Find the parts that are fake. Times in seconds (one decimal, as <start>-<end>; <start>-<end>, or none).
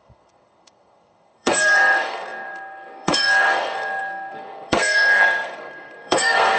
0.0-6.6